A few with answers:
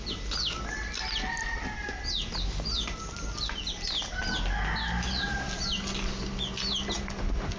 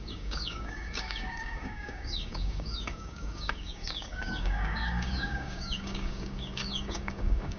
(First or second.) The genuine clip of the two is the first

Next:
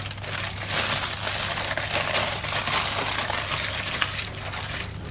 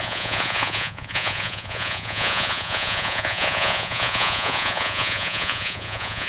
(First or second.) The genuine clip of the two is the first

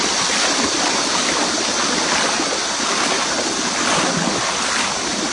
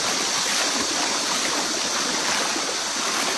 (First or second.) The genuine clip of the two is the second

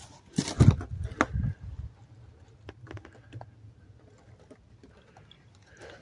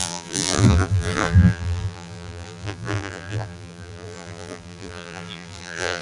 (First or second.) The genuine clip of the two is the first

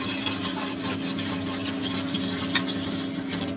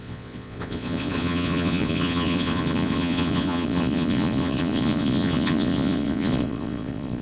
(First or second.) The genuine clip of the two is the first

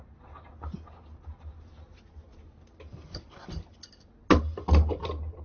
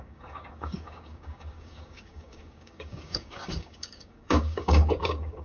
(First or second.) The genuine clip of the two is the first